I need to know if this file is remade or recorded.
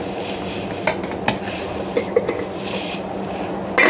recorded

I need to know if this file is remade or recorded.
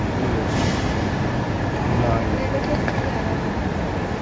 recorded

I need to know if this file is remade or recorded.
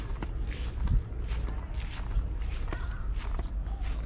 recorded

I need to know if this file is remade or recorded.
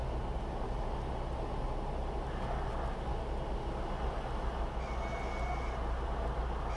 recorded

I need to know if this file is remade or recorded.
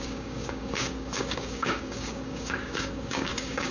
remade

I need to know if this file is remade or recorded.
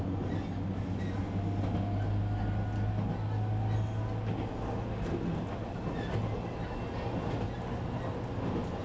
recorded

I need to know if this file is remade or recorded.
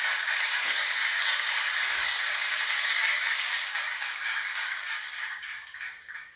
remade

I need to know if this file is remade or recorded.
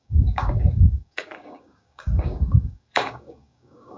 remade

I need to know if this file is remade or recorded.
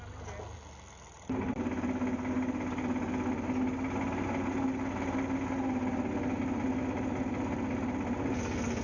recorded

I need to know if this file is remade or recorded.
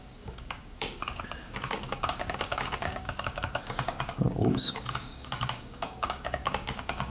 remade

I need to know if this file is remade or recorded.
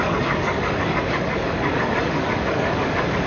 remade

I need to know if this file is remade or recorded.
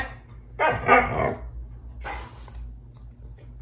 recorded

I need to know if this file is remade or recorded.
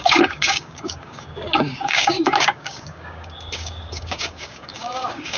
remade